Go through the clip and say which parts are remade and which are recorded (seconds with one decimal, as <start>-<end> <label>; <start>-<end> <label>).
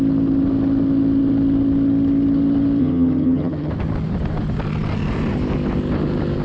0.0-2.8 recorded; 2.8-3.7 remade; 3.7-6.4 recorded